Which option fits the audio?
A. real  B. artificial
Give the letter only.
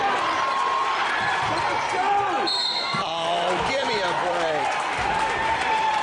B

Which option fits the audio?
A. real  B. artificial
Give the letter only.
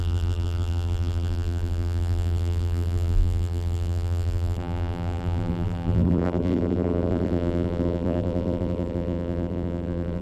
B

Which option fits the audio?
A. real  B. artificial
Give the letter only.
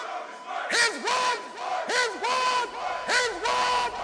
A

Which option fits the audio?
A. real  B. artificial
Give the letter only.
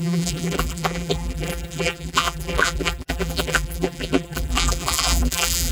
B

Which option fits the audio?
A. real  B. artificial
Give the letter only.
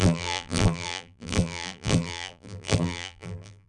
B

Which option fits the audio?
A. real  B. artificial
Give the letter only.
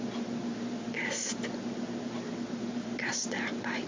A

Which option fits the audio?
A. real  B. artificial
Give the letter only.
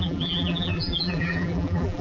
B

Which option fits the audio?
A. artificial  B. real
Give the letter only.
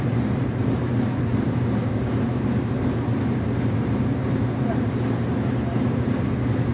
A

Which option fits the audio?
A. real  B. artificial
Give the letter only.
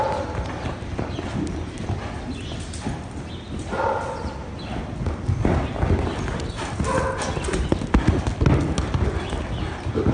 A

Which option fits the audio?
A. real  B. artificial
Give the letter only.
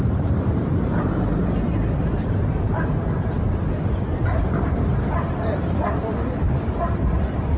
B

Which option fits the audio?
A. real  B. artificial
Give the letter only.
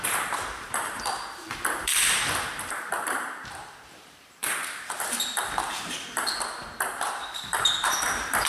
B